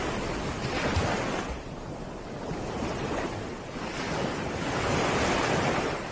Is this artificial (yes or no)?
no